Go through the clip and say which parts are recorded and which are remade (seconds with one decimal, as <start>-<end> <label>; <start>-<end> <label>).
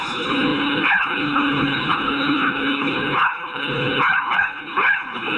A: 0.0-5.4 remade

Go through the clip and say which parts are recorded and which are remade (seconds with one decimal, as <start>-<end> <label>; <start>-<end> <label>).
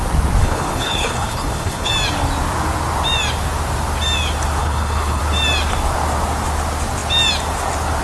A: 0.0-0.4 recorded; 0.4-1.9 remade; 1.9-4.6 recorded; 4.6-5.2 remade; 5.2-8.0 recorded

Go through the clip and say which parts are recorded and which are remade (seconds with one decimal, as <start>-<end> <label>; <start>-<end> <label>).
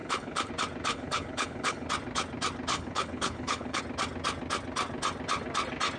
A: 0.0-0.5 remade; 0.5-0.9 recorded; 0.9-1.9 remade; 1.9-2.7 recorded; 2.7-3.8 remade; 3.8-6.0 recorded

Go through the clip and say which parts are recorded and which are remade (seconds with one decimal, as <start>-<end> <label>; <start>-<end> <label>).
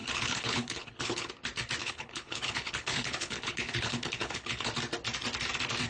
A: 0.0-1.3 remade; 1.3-1.8 recorded; 1.8-4.7 remade; 4.7-5.9 recorded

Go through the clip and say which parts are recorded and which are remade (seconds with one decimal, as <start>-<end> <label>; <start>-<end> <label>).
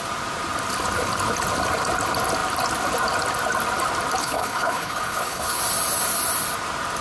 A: 0.0-4.2 recorded; 4.2-5.6 remade; 5.6-7.0 recorded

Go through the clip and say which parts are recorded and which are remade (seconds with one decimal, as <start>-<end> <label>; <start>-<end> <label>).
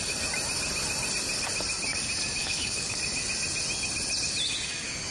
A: 0.0-2.4 recorded; 2.4-3.0 remade; 3.0-5.1 recorded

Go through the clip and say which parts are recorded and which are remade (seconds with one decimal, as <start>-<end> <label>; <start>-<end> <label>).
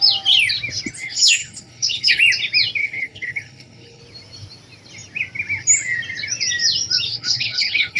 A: 0.0-1.0 recorded; 1.0-2.2 remade; 2.2-2.8 recorded; 2.8-4.0 remade; 4.0-7.1 recorded; 7.1-8.0 remade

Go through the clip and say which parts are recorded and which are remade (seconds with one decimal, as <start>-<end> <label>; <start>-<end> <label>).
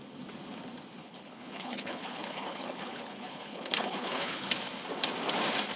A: 0.0-1.0 recorded; 1.0-4.5 remade; 4.5-5.8 recorded